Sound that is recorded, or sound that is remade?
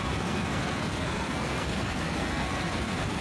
remade